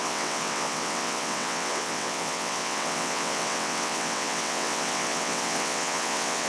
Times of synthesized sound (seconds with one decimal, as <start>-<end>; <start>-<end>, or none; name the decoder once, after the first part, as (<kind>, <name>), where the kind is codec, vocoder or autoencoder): 0.0-6.5 (vocoder, WaveNeXt)